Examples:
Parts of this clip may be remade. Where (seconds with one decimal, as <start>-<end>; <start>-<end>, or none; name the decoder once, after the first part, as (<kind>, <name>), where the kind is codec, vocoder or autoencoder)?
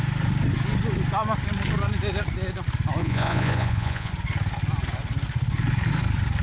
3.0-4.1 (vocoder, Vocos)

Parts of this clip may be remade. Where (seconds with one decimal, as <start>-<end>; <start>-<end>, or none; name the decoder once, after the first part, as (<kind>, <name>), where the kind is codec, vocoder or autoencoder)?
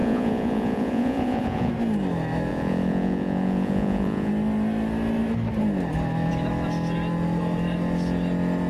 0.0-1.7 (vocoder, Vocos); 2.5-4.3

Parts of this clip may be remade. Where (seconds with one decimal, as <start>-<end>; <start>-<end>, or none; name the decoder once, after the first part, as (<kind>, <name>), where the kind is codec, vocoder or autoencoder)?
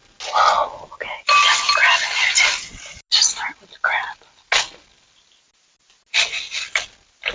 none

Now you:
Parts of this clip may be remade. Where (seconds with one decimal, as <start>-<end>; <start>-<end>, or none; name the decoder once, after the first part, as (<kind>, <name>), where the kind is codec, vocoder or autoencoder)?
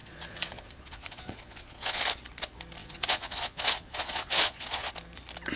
0.0-2.0 (vocoder, Vocos); 2.8-4.9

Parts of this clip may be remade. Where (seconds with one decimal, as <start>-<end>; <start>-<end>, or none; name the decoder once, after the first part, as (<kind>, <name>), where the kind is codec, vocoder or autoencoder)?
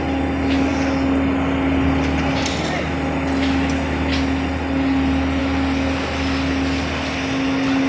none